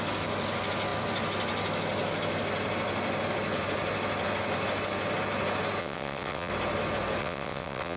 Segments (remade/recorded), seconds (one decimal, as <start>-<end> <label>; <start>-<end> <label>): 0.0-5.8 recorded; 5.8-6.5 remade; 6.5-7.2 recorded; 7.2-8.0 remade